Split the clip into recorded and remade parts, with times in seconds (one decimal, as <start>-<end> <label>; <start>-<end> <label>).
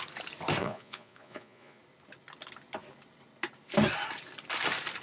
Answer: 0.0-0.6 recorded; 0.6-1.8 remade; 1.8-5.0 recorded